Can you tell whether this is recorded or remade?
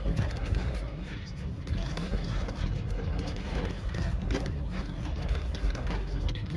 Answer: remade